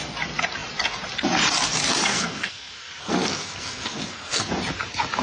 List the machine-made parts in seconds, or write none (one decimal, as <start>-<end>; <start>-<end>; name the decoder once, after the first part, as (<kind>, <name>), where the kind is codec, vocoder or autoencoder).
2.1-4.5 (codec, SNAC)